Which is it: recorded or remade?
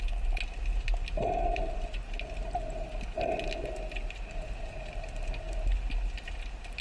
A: recorded